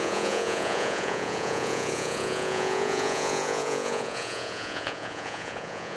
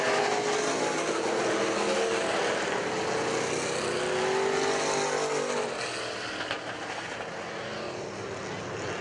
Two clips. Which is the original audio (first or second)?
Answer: second